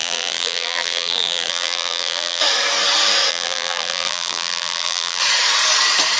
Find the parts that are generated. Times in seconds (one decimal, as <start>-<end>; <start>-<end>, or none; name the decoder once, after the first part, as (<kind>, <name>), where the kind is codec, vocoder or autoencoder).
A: 0.0-2.4 (vocoder, BigVGAN v2); 3.3-5.2